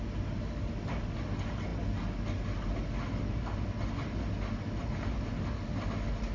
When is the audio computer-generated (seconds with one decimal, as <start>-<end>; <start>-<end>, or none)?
none